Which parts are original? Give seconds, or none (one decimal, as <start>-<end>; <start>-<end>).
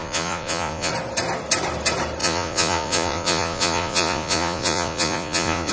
0.9-2.2